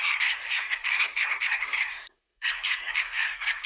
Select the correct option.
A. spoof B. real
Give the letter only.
A